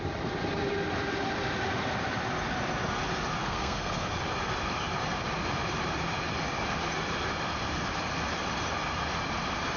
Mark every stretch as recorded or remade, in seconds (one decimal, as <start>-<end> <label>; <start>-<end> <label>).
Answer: 0.0-3.4 recorded; 3.4-4.2 remade; 4.2-9.8 recorded